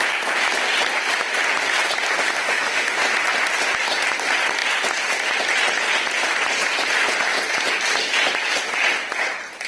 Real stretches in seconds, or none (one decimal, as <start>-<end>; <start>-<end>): 0.0-2.4; 3.0-9.7